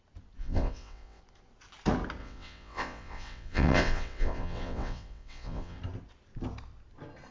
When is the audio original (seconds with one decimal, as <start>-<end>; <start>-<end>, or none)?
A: 0.0-0.4; 1.2-2.2; 5.8-7.3